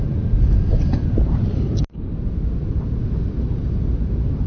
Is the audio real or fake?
real